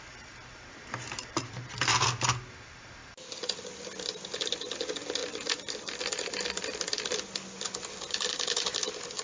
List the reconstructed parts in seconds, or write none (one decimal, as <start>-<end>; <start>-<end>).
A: 0.0-1.9; 2.5-3.0; 4.4-9.2